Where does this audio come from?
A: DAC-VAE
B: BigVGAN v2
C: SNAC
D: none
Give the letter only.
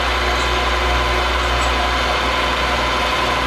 D